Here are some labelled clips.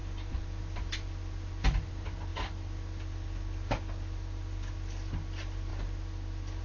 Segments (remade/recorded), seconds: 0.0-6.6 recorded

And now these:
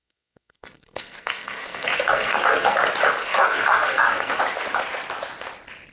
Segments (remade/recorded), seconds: 0.0-2.8 remade; 2.8-3.2 recorded; 3.2-4.4 remade; 4.4-5.9 recorded